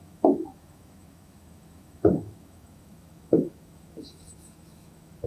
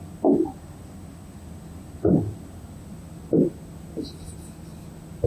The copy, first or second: first